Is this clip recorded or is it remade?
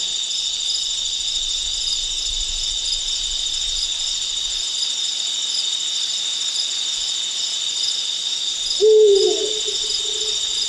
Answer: recorded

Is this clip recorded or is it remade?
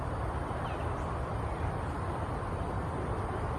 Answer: recorded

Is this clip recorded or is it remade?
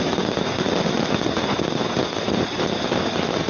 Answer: recorded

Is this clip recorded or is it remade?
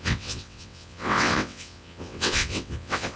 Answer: remade